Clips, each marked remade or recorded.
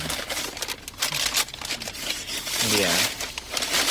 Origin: recorded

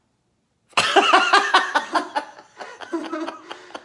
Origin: recorded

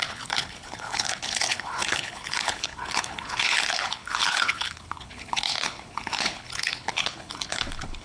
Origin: remade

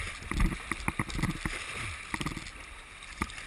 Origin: recorded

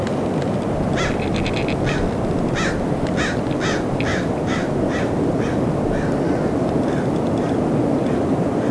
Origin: recorded